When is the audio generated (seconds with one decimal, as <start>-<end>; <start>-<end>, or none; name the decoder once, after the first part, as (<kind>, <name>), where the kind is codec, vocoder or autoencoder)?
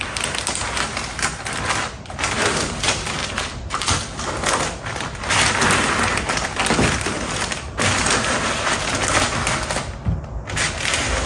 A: 3.2-4.2 (vocoder, BigVGAN v2)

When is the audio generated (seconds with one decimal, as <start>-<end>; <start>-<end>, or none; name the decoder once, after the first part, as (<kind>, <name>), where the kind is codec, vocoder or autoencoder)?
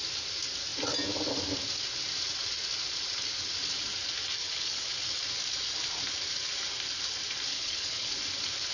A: 4.4-4.9 (codec, HILCodec); 7.5-8.1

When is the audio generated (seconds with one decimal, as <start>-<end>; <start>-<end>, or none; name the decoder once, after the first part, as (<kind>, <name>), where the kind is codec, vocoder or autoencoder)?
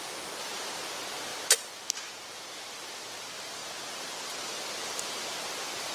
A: 3.6-4.6 (vocoder, BigVGAN v2)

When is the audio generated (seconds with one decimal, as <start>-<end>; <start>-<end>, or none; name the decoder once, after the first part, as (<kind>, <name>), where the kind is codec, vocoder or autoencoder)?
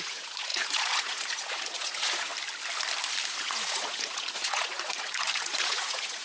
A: 0.0-2.3 (vocoder, Vocos); 3.3-6.2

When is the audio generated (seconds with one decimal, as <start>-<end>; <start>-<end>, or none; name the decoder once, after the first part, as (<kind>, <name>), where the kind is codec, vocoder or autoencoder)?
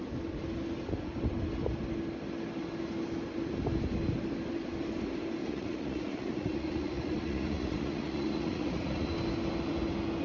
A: 5.4-9.1 (vocoder, Vocos)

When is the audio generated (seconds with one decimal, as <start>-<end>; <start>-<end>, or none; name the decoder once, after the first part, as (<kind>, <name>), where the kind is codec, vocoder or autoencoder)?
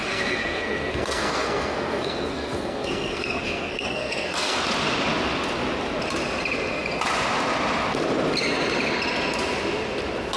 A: 0.0-4.6 (codec, SNAC)